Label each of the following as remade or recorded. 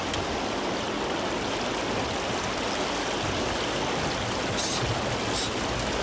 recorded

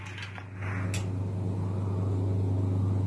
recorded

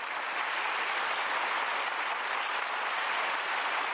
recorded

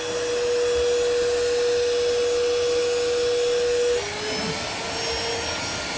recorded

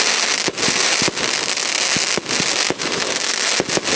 recorded